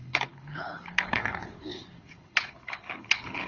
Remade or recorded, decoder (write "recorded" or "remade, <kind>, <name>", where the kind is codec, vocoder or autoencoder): remade, codec, HILCodec